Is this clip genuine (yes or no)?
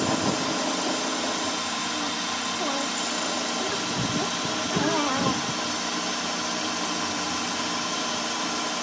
yes